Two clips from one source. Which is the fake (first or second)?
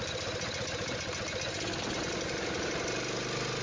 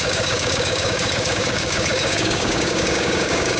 second